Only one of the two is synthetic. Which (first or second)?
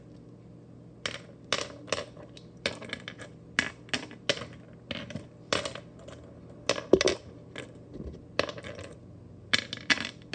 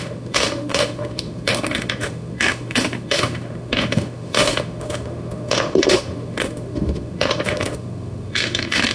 second